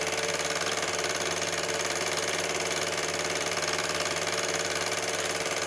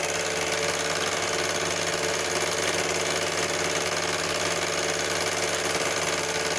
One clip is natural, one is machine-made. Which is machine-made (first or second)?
first